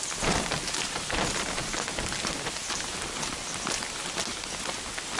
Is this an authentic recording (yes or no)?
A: yes